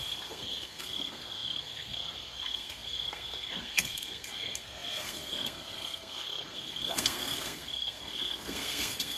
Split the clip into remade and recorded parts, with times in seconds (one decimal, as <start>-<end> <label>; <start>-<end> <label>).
0.0-9.2 remade